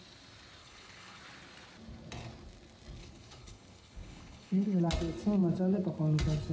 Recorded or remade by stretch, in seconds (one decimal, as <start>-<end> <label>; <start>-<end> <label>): 0.0-0.6 recorded; 0.6-1.2 remade; 1.2-3.0 recorded; 3.0-4.8 remade; 4.8-6.5 recorded